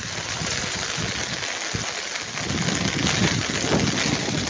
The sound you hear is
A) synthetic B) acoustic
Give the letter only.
B